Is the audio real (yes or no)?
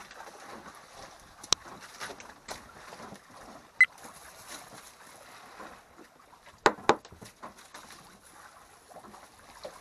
yes